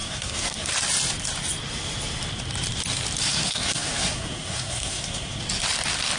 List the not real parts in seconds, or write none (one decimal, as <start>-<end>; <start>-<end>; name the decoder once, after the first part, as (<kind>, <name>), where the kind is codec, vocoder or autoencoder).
0.0-0.7 (codec, SNAC); 3.3-5.4